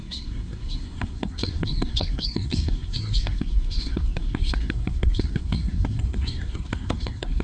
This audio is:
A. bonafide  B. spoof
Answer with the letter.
B